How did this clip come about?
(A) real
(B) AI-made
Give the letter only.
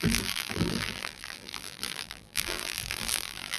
B